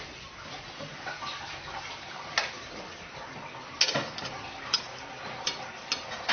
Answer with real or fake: real